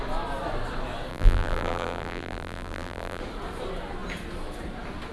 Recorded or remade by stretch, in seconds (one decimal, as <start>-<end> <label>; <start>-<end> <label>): 0.0-1.1 recorded; 1.1-3.2 remade; 3.2-5.1 recorded